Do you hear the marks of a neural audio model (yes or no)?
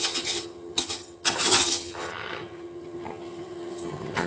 yes